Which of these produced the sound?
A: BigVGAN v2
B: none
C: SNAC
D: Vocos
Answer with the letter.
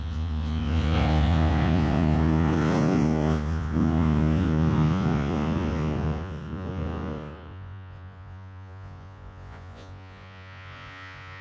D